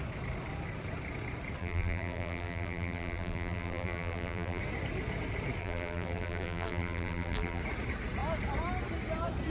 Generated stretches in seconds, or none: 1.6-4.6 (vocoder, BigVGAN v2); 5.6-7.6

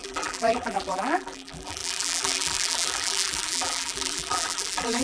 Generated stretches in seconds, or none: 0.0-5.0 (vocoder, BigVGAN v2)

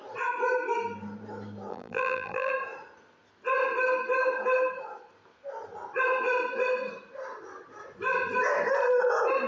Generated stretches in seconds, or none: 1.7-2.5 (vocoder, BigVGAN v2)

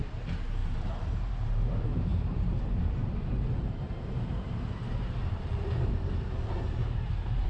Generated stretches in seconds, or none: 0.0-7.5 (vocoder, BigVGAN v2)

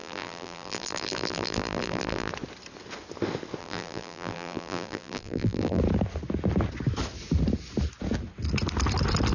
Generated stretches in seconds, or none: 0.0-2.3 (vocoder, BigVGAN v2); 3.6-5.8

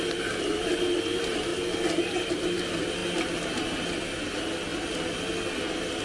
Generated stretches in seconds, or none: 1.5-2.6 (vocoder, BigVGAN v2); 3.0-4.2